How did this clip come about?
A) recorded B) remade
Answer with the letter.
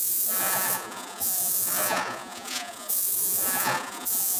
B